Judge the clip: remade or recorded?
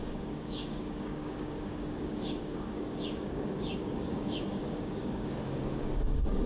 remade